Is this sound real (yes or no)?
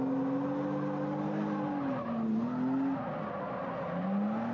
yes